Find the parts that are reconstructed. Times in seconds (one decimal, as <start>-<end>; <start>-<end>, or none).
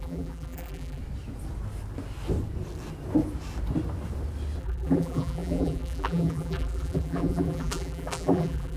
0.0-1.0; 4.6-8.8